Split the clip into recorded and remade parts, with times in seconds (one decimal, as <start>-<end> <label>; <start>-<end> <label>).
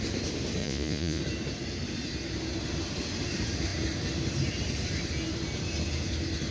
0.0-0.6 recorded; 0.6-1.2 remade; 1.2-6.5 recorded